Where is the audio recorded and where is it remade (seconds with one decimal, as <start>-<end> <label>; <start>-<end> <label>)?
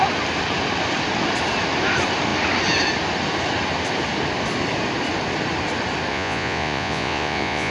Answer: 0.0-6.1 recorded; 6.1-7.7 remade